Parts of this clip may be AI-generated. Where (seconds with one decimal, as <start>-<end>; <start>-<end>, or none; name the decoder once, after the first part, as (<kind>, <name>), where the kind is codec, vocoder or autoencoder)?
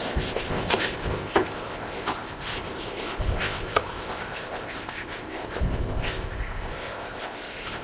0.0-7.8 (codec, ZipCodec)